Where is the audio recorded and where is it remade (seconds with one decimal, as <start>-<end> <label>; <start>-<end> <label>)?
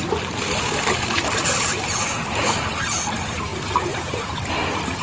0.0-5.0 recorded